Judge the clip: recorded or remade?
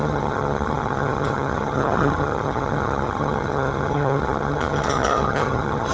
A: remade